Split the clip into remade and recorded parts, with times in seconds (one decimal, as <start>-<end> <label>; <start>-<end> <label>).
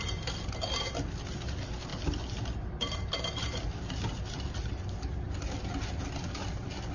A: 0.0-6.9 recorded